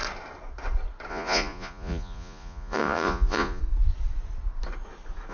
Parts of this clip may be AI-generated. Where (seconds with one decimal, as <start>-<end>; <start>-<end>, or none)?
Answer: 1.1-3.6